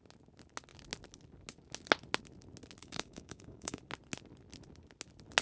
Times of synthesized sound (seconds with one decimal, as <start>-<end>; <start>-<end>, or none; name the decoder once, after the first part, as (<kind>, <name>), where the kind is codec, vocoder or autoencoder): 2.8-3.8 (codec, DAC)